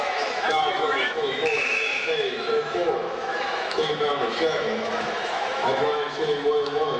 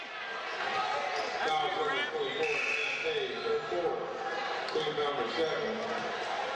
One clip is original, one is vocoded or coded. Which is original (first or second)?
second